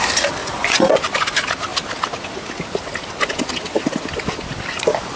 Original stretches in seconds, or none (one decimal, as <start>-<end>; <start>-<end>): 0.0-0.4; 1.0-5.2